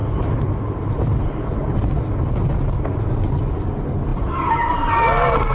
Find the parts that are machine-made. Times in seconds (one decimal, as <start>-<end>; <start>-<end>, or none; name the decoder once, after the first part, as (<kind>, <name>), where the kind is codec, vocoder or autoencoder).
0.0-2.0 (vocoder, BigVGAN v2); 4.1-4.9